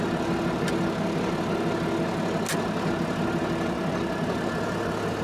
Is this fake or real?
real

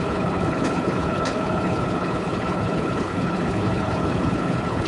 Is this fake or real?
fake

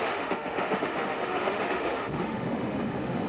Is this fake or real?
fake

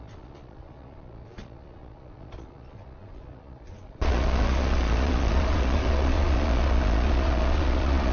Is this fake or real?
fake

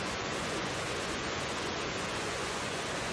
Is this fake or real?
fake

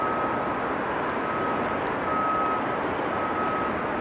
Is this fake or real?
real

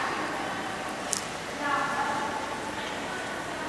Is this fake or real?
real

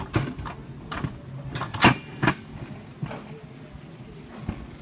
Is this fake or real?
real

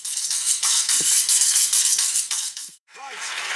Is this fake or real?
fake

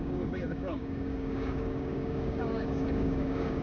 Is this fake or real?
fake